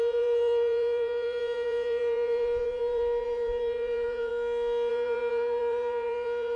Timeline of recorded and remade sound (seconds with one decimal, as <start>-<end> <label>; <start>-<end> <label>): 0.0-4.3 remade; 4.3-4.9 recorded; 4.9-6.6 remade